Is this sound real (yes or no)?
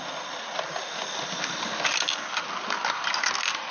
yes